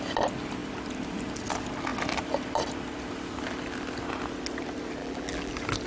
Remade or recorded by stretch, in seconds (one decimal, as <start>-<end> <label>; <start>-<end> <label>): 0.0-5.0 recorded; 5.0-5.5 remade; 5.5-5.9 recorded